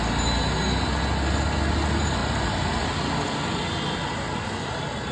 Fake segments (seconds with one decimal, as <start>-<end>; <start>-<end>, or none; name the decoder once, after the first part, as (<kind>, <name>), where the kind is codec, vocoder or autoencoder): none